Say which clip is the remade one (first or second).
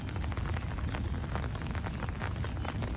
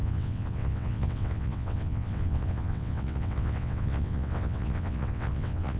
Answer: second